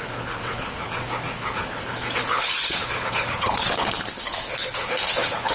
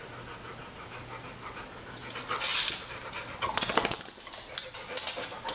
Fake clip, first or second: first